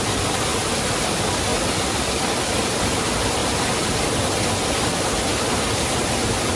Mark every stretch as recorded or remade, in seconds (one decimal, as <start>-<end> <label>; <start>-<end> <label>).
0.0-3.4 recorded; 3.4-4.0 remade; 4.0-6.6 recorded